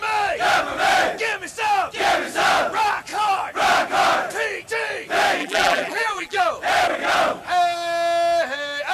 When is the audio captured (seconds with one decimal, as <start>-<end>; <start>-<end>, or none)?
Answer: 0.0-5.4; 6.4-8.9

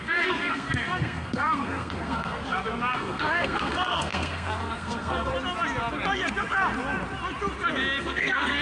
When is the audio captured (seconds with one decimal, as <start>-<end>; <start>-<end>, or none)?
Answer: 5.3-8.0

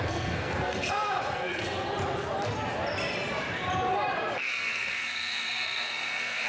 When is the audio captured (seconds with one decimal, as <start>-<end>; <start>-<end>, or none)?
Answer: 1.6-4.4

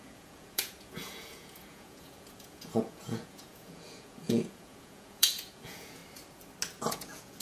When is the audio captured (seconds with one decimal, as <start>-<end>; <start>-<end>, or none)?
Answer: 6.0-6.9